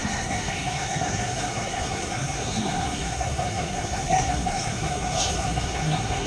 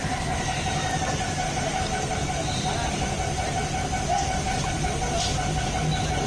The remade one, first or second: first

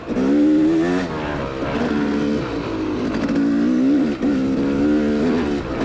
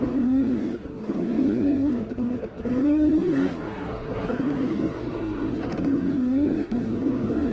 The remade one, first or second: second